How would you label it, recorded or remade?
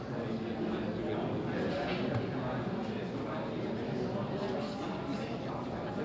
recorded